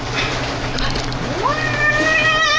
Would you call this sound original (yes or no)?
yes